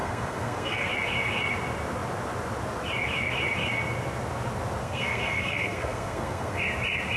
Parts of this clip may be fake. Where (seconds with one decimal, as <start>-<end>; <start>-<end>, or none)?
0.0-0.9; 4.8-6.6